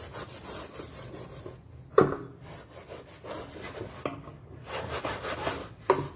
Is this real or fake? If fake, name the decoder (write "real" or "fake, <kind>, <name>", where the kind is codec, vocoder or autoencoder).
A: real